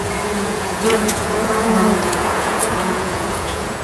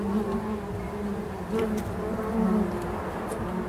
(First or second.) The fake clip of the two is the first